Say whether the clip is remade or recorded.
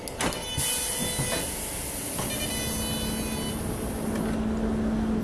recorded